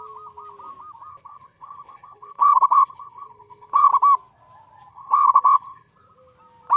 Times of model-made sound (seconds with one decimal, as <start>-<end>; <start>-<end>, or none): 1.1-3.9; 4.9-5.9